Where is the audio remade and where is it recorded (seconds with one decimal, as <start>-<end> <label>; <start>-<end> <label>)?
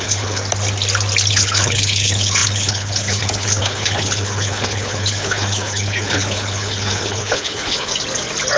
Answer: 0.0-0.4 remade; 0.4-1.3 recorded; 1.3-7.9 remade; 7.9-8.6 recorded